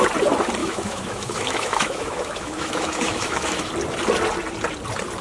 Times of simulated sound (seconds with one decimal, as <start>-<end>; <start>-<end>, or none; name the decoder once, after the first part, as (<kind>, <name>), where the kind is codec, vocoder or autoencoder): 0.6-3.7 (autoencoder, DAC-VAE)